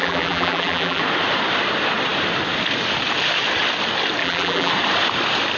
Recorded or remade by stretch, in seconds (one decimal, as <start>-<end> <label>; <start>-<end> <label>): 0.0-1.0 remade; 1.0-4.2 recorded; 4.2-4.7 remade; 4.7-5.6 recorded